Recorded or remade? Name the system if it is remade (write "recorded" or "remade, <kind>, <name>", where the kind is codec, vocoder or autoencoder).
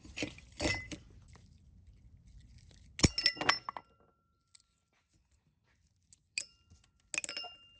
recorded